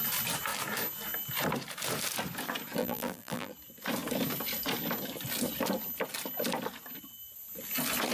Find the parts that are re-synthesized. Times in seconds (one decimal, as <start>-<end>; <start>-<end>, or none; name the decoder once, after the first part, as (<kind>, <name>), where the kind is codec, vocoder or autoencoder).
2.8-3.5 (vocoder, BigVGAN v2)

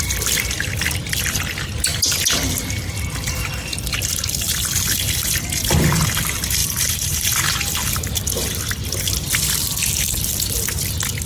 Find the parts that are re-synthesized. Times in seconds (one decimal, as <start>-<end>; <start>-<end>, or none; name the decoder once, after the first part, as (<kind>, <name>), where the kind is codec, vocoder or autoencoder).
6.6-7.4 (vocoder, BigVGAN v2)

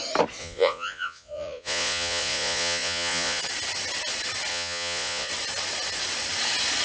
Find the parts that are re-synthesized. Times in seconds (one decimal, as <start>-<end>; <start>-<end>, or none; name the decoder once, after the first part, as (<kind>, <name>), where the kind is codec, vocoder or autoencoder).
0.4-3.4 (vocoder, Vocos); 4.5-5.3

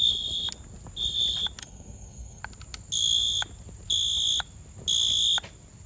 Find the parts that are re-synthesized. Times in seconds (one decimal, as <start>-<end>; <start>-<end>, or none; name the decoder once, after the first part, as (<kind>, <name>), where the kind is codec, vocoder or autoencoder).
1.6-2.4 (codec, SNAC)

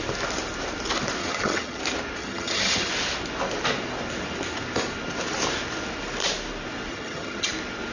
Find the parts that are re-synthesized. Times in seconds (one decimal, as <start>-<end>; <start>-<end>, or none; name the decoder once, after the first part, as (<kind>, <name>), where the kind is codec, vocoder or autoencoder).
1.2-1.8 (vocoder, HiFi-GAN); 2.2-2.9; 6.9-7.5

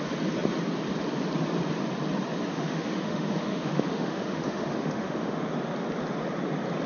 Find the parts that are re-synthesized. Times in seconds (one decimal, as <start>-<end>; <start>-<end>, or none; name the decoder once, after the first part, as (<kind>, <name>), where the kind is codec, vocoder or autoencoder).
2.5-5.4 (autoencoder, DAC-VAE)

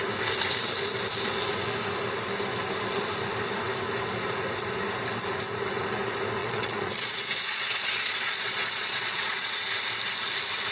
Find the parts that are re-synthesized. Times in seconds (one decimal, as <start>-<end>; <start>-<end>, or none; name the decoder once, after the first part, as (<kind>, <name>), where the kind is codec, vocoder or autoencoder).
6.4-9.6 (vocoder, Vocos)

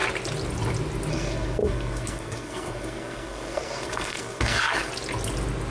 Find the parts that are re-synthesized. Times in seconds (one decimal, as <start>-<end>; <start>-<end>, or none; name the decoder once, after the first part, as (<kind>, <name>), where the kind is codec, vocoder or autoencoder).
1.1-4.9 (codec, SNAC)